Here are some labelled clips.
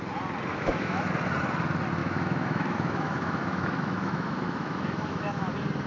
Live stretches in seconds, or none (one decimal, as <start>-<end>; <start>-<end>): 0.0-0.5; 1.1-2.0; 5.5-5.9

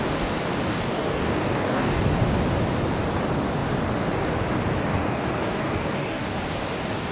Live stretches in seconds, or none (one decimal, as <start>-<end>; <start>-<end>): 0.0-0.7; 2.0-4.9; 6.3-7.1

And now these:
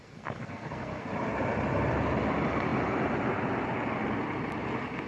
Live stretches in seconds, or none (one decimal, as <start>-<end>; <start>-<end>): 1.1-5.1

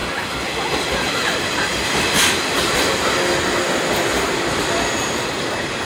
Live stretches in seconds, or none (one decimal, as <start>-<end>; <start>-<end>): 0.0-1.1; 1.7-4.6

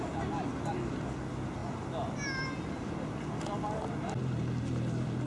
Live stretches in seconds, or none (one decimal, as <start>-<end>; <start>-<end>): 0.0-5.3

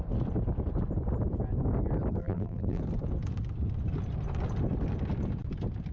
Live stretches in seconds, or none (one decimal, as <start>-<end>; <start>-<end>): 0.0-2.2; 2.8-5.9

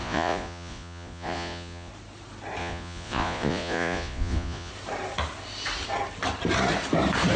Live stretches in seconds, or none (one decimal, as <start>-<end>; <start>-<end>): 1.9-2.6; 4.7-7.4

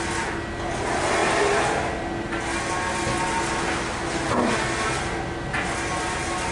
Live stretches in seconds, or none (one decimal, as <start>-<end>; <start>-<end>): 0.0-6.5